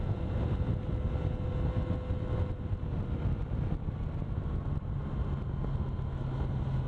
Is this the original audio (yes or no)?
yes